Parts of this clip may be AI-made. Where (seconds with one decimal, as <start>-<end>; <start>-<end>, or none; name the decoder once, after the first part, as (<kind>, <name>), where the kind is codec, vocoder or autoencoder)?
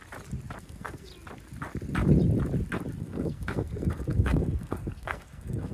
0.6-1.1 (codec, SNAC); 3.0-5.7